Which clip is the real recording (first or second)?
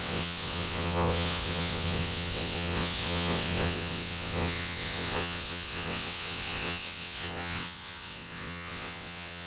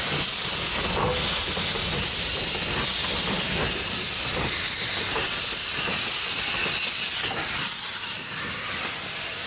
second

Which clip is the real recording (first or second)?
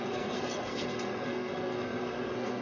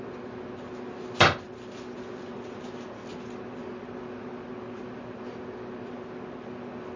second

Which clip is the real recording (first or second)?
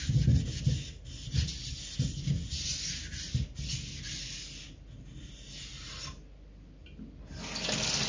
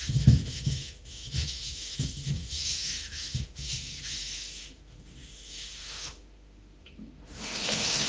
first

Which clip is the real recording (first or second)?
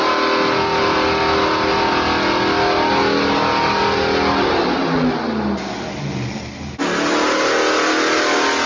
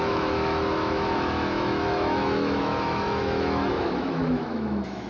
first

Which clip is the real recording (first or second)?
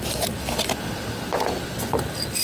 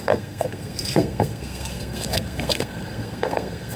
first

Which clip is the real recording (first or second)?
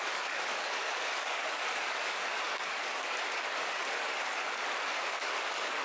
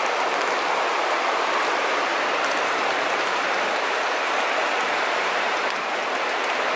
second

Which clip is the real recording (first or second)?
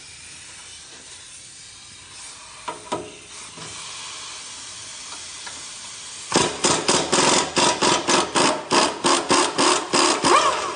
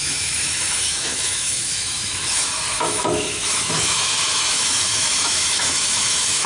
first